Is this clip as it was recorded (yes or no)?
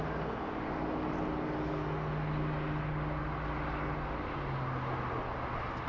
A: yes